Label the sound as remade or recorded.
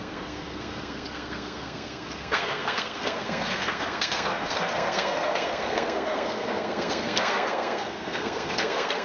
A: remade